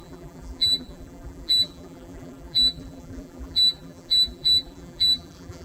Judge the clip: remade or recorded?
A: remade